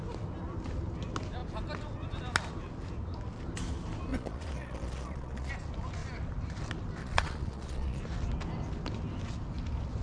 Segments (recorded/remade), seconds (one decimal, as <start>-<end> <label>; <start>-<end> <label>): 0.0-4.1 recorded; 4.1-5.5 remade; 5.5-7.0 recorded; 7.0-8.0 remade; 8.0-10.0 recorded